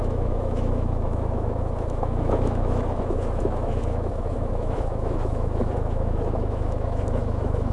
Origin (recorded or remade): remade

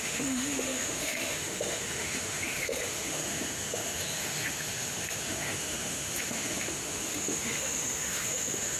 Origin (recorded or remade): remade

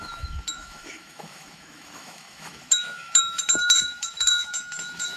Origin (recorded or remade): remade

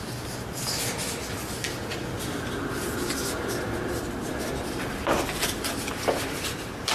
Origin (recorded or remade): recorded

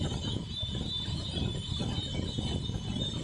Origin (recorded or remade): recorded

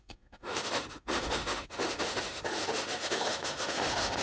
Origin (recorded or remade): remade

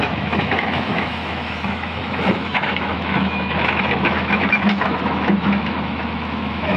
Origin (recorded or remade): remade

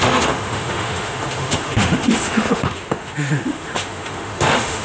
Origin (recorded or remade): remade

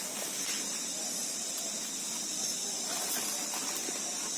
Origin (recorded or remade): recorded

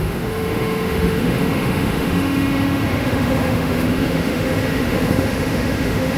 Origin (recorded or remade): remade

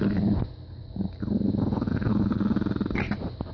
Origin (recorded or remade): recorded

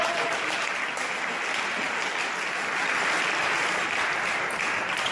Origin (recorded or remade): recorded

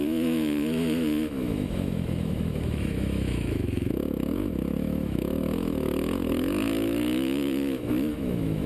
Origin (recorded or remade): remade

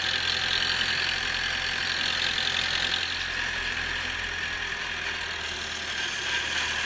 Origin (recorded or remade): recorded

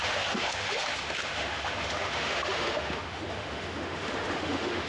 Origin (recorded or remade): remade